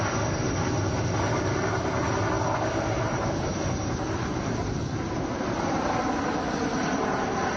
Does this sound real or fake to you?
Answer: real